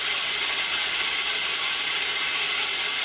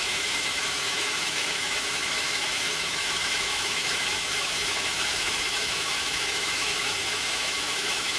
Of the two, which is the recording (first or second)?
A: first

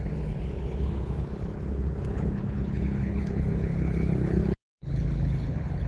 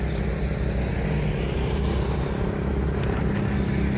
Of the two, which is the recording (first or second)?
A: second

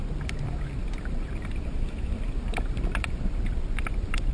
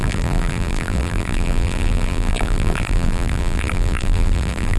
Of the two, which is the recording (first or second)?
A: first